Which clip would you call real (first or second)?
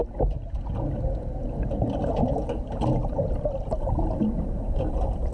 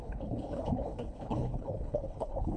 first